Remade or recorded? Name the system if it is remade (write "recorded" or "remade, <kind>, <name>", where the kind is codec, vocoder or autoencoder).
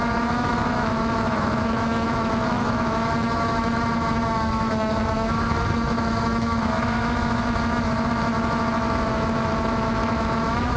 remade, autoencoder, DAC-VAE